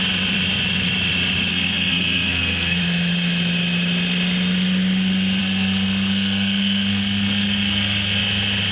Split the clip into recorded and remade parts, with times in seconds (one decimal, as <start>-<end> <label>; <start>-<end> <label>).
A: 0.0-1.5 recorded; 1.5-2.8 remade; 2.8-5.4 recorded; 5.4-8.2 remade; 8.2-8.7 recorded